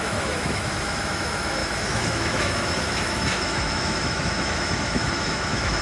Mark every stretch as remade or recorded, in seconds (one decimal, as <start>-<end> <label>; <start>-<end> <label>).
0.0-5.8 remade